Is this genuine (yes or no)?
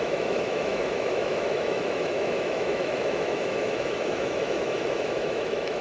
no